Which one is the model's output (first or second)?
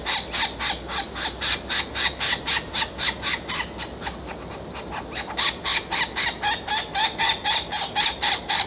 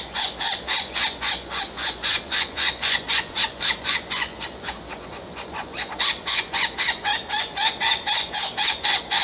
second